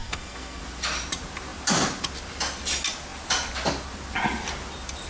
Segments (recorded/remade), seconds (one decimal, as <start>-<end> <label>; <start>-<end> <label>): 0.0-0.6 remade; 0.6-5.1 recorded